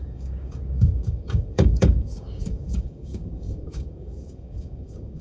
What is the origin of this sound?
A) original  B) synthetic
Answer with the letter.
B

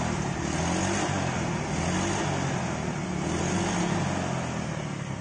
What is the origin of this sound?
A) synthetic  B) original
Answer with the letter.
B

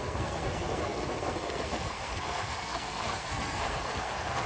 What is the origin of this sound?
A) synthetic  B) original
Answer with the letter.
A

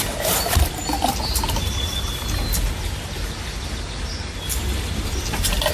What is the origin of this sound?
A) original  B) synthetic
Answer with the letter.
A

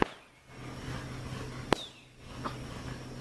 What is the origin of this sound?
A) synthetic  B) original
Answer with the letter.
B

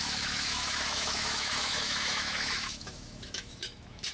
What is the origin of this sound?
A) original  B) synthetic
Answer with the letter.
B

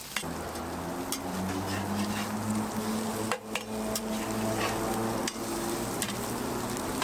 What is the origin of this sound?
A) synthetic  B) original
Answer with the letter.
B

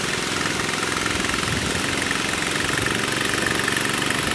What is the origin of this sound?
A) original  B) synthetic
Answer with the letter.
A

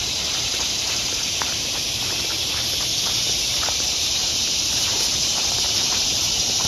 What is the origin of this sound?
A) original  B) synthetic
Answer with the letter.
B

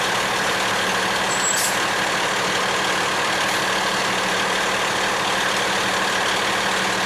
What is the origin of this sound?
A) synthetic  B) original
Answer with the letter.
B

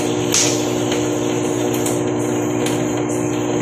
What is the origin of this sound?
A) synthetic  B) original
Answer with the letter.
B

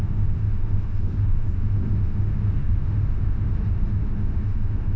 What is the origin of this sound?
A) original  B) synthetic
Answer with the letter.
B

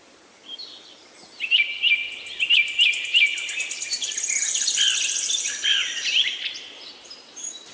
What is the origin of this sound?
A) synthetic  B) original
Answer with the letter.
B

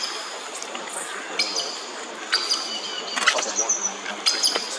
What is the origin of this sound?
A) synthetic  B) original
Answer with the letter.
B